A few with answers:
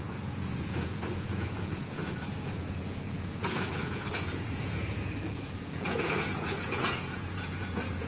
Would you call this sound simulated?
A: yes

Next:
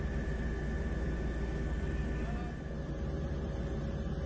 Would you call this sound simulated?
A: no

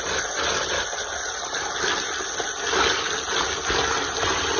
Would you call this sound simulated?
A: no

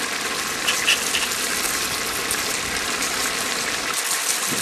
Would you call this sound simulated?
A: no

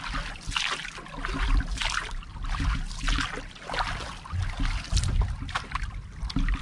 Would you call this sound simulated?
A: no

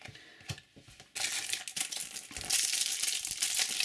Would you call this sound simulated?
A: no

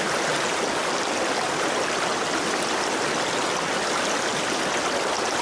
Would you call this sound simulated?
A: no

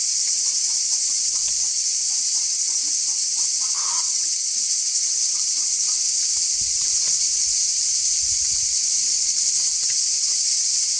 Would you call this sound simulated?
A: yes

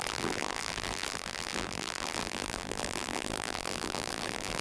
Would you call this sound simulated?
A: yes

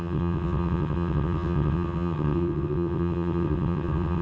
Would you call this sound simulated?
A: yes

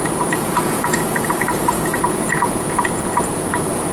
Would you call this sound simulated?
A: yes